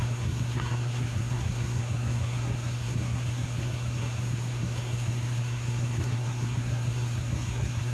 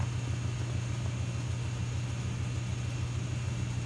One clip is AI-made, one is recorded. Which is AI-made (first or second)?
first